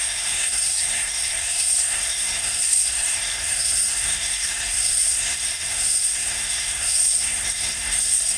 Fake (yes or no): yes